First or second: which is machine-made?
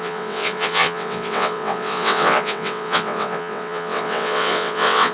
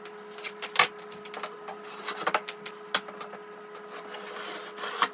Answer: first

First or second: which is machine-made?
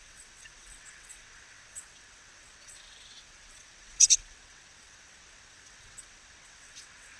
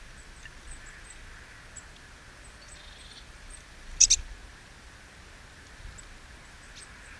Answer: first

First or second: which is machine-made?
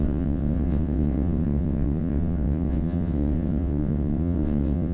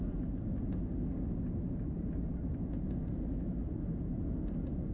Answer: first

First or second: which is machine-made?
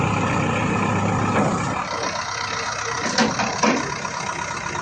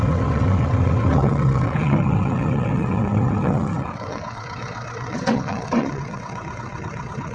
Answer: second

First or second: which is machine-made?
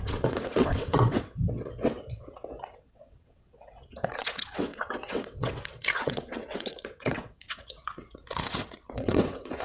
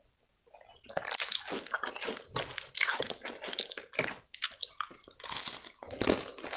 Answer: first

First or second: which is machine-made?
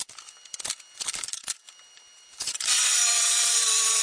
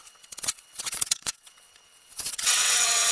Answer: second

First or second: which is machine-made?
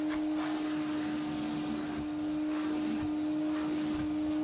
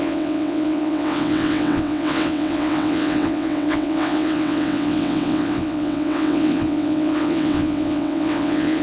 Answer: second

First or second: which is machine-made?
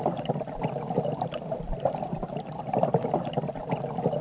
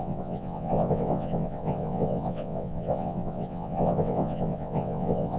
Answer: second